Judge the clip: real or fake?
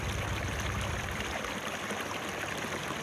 fake